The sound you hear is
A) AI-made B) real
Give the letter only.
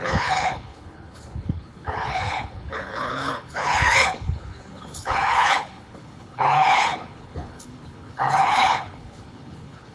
A